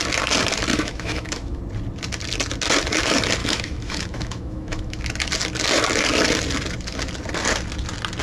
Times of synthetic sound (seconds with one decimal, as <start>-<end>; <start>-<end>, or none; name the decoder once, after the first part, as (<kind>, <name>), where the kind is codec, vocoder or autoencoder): 0.7-1.6 (autoencoder, DAC-VAE); 3.4-5.0